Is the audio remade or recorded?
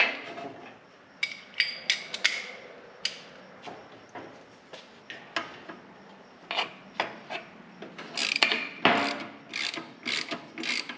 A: recorded